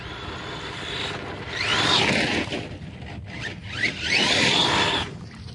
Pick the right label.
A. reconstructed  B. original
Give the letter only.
A